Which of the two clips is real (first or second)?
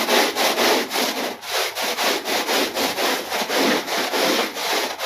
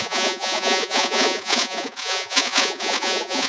first